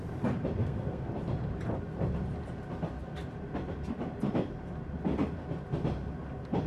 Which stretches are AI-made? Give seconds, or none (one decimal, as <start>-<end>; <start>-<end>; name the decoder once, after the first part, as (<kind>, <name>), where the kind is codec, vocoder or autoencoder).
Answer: 0.6-1.1 (codec, SNAC)